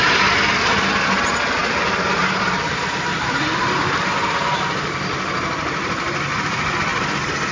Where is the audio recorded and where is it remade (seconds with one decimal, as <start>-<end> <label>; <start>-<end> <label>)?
0.0-1.6 recorded; 1.6-5.9 remade; 5.9-6.9 recorded; 6.9-7.5 remade